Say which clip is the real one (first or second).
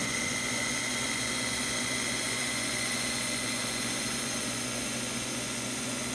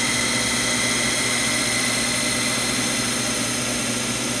second